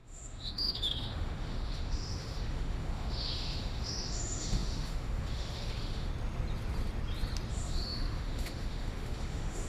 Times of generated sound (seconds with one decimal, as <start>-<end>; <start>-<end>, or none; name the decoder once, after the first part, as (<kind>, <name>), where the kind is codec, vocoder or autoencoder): 0.0-6.1 (autoencoder, DAC-VAE); 7.5-9.7